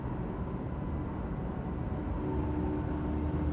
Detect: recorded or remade recorded